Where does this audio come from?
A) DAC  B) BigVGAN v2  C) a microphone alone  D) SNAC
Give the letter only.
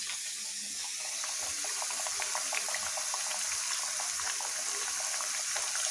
C